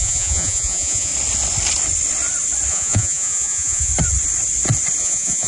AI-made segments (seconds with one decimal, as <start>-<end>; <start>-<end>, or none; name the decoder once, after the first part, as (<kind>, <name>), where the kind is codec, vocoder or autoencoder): 0.0-1.1 (vocoder, Vocos); 2.7-3.9; 5.0-5.5